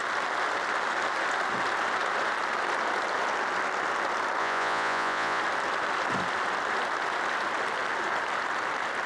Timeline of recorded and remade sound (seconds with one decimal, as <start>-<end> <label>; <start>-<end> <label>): 0.0-4.4 recorded; 4.4-5.4 remade; 5.4-9.1 recorded